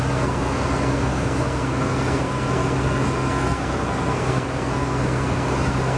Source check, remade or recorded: remade